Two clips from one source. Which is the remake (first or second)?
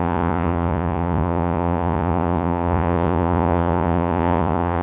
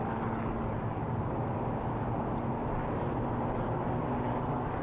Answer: first